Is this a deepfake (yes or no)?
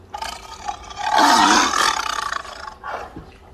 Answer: no